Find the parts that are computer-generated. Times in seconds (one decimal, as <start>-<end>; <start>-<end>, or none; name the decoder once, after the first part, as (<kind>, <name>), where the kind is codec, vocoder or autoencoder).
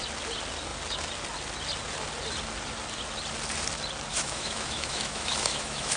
4.1-6.0 (autoencoder, DAC-VAE)